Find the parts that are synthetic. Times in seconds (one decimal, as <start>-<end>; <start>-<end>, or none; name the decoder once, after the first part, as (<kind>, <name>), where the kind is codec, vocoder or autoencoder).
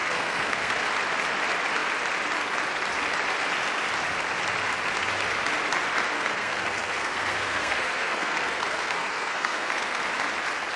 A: 0.0-0.8 (codec, SNAC); 6.1-10.0